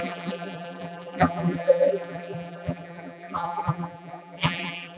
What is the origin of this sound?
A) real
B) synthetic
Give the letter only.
B